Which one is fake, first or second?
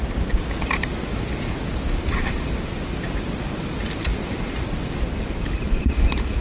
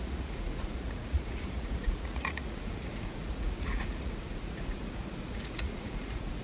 second